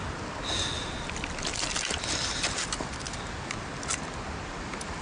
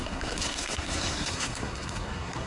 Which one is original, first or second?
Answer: first